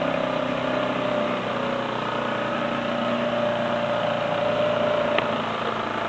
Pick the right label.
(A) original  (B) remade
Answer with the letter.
A